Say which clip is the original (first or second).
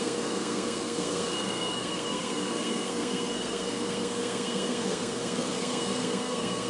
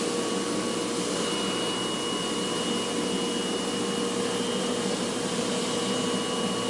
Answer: second